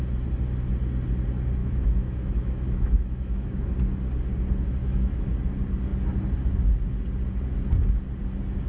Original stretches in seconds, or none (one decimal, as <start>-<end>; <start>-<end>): 0.0-1.6; 3.6-4.8; 5.3-8.7